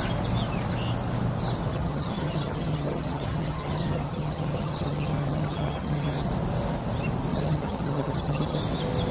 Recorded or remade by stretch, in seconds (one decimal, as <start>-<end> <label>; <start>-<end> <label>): 0.0-1.7 recorded; 1.7-6.3 remade; 6.3-7.3 recorded; 7.3-8.6 remade; 8.6-9.1 recorded